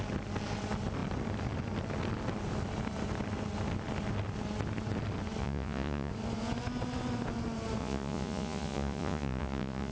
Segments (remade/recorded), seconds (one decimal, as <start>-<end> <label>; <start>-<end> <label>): 0.0-5.4 recorded; 5.4-6.1 remade; 6.1-7.8 recorded; 7.8-9.9 remade